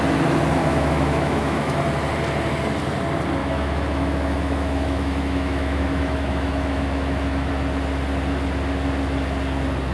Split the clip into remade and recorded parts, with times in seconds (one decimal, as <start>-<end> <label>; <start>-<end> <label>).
0.0-0.6 recorded; 0.6-1.8 remade; 1.8-3.4 recorded; 3.4-7.5 remade; 7.5-9.9 recorded